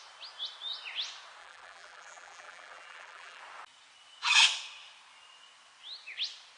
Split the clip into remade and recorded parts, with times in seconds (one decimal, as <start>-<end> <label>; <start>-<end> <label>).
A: 0.0-1.4 recorded; 1.4-3.4 remade; 3.4-6.6 recorded